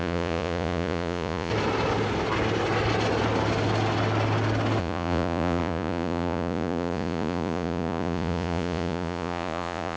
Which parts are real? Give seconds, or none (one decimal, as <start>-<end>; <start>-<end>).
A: 1.5-4.8